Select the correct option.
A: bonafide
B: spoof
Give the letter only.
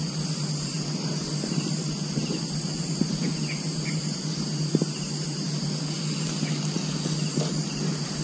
A